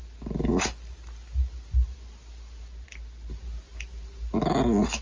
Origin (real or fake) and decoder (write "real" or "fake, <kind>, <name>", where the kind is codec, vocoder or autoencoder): real